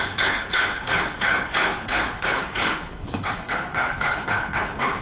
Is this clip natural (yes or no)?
no